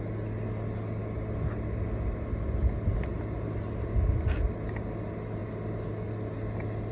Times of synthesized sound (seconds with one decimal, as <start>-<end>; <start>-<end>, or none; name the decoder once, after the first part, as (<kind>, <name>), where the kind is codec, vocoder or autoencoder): none